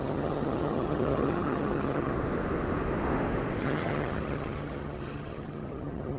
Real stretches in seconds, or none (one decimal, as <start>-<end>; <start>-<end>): 2.1-3.6